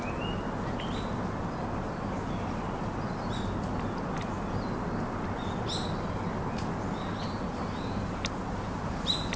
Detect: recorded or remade recorded